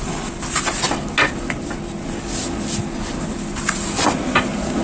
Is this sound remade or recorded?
recorded